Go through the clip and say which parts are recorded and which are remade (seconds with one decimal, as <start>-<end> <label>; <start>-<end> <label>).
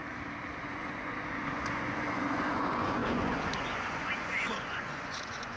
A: 0.0-0.6 recorded; 0.6-5.6 remade